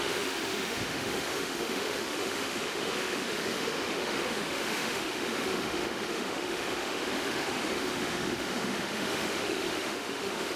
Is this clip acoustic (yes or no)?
no